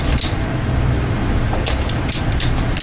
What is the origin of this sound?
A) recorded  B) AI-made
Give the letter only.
B